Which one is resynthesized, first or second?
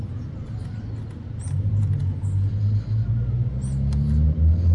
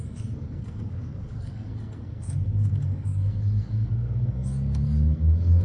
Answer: second